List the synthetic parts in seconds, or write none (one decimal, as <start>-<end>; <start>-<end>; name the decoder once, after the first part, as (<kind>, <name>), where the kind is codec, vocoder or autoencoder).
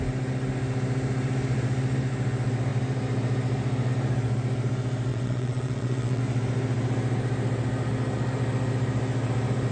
5.1-6.2 (vocoder, WaveNeXt)